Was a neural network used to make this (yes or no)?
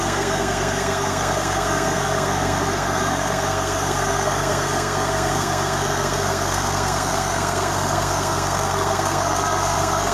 yes